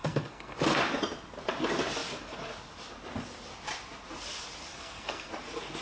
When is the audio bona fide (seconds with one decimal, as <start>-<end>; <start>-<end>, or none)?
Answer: 0.8-4.7; 5.3-5.8